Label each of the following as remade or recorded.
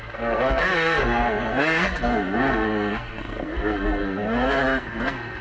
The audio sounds remade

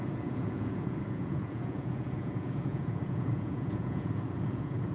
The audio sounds remade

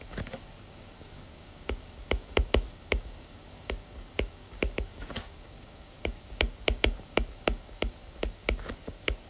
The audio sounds remade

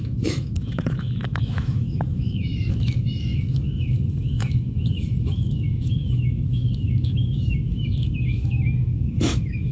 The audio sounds remade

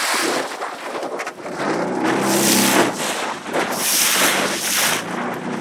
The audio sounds recorded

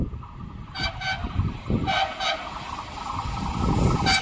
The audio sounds recorded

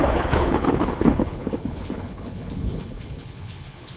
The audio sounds remade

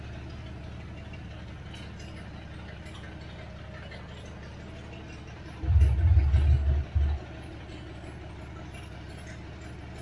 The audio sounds recorded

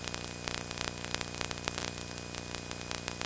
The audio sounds recorded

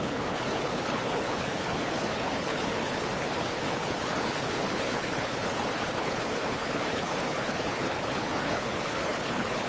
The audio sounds remade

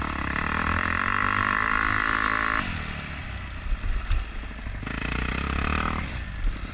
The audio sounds recorded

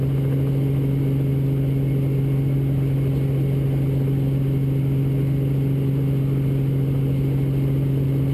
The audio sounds recorded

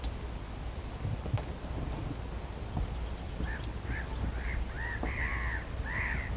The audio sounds recorded